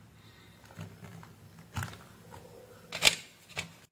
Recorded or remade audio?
recorded